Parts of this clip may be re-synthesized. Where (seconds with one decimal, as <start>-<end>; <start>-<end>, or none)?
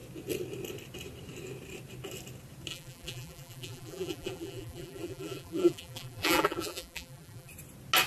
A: 2.7-7.5